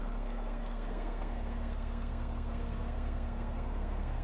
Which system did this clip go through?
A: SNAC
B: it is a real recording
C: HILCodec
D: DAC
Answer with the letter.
A